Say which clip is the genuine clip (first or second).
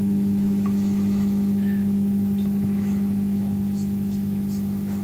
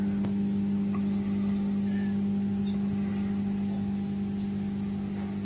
second